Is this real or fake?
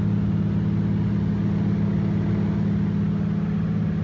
real